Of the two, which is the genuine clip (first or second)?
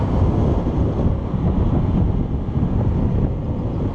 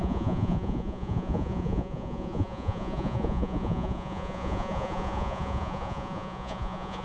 first